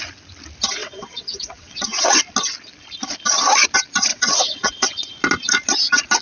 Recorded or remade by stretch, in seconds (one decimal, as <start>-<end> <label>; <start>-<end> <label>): 0.0-0.8 recorded; 0.8-2.2 remade; 2.2-4.1 recorded; 4.1-5.1 remade; 5.1-6.2 recorded

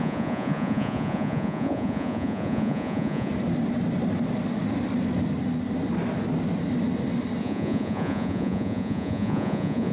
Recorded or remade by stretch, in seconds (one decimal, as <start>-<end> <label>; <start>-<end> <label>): 0.0-3.3 remade; 3.3-7.4 recorded; 7.4-9.9 remade